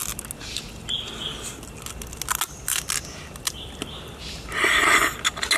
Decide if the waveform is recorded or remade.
recorded